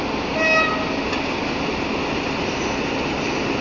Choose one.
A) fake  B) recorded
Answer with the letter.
B